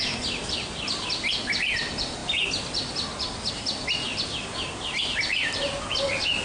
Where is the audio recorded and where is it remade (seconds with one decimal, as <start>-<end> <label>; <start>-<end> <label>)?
0.0-6.4 recorded